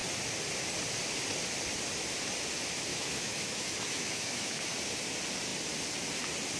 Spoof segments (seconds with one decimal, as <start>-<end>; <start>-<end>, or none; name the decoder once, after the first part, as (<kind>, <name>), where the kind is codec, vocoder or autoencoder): 2.9-4.6 (autoencoder, DAC-VAE)